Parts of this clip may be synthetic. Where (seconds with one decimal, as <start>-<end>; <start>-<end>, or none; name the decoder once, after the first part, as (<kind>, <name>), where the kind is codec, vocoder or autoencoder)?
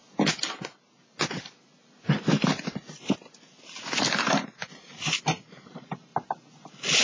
2.1-2.5 (vocoder, BigVGAN v2); 4.9-6.1